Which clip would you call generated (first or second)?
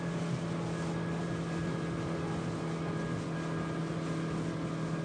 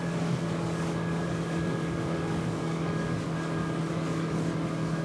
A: second